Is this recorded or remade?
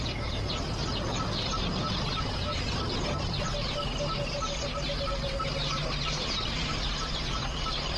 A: recorded